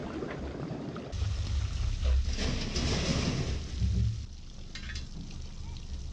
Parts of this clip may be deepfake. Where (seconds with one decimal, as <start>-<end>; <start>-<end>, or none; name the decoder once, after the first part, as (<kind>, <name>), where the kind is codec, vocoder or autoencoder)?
none